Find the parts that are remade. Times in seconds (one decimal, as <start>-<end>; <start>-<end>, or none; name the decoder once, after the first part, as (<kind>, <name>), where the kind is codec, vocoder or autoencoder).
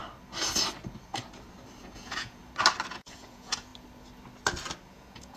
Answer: 1.8-2.4 (vocoder, Vocos); 2.9-3.7; 4.9-5.4